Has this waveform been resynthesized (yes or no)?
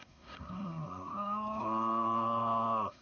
yes